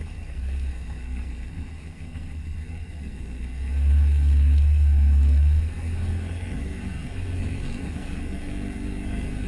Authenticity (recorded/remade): remade